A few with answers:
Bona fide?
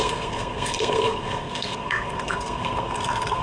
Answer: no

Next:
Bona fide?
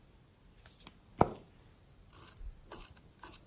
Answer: yes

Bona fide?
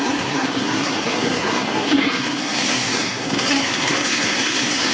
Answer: no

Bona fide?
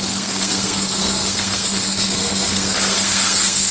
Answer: no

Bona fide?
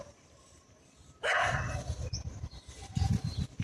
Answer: yes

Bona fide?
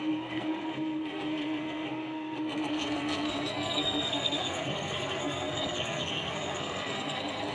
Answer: no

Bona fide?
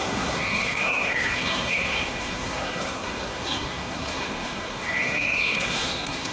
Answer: no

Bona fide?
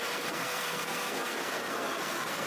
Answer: no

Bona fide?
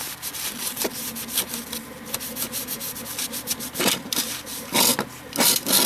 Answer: yes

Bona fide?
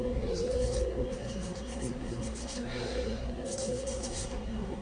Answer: no